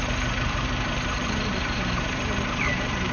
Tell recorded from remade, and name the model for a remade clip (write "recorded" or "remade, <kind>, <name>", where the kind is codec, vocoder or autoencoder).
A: remade, vocoder, BigVGAN v2